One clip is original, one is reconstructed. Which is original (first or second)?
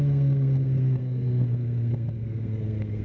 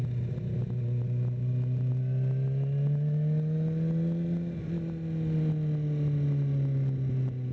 second